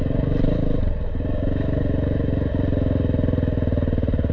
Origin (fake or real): real